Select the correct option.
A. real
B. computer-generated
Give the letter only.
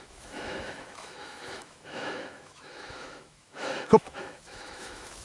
B